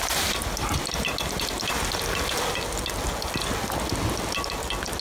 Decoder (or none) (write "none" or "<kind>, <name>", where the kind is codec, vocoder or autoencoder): none